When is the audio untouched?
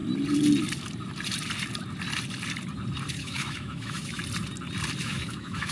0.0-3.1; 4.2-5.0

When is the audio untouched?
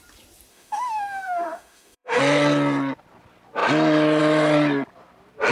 0.0-0.5; 2.2-5.5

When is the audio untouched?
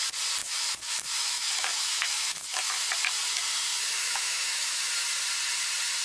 0.0-0.4; 2.7-3.9; 4.9-6.0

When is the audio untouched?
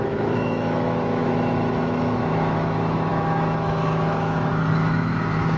none